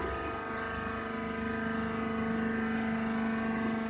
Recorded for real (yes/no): yes